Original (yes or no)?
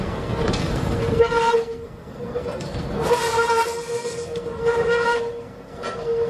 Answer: no